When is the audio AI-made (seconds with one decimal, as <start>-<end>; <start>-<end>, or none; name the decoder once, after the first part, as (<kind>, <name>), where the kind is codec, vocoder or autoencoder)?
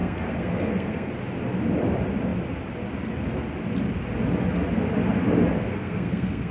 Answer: 0.0-1.1 (codec, SNAC); 5.7-6.5